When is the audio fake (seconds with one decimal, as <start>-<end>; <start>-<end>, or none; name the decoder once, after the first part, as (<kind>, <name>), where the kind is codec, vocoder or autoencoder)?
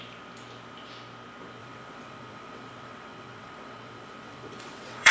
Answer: 1.6-5.1 (vocoder, WaveNeXt)